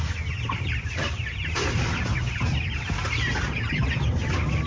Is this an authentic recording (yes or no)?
yes